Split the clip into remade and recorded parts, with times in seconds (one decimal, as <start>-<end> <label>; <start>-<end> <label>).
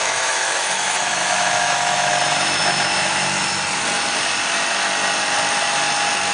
0.0-2.1 remade; 2.1-6.3 recorded